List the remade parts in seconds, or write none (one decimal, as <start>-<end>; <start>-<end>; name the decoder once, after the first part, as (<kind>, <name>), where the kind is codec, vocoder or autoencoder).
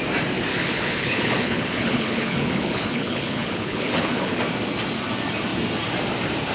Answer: 0.5-4.4 (codec, HILCodec)